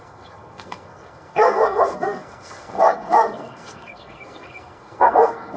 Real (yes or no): no